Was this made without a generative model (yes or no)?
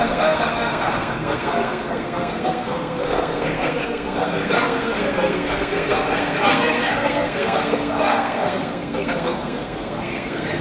no